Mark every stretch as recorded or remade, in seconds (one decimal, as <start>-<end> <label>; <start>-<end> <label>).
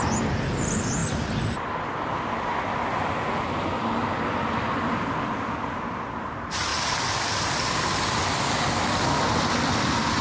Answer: 0.0-10.2 recorded